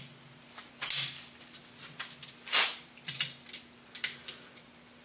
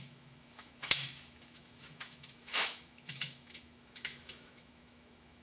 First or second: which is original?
first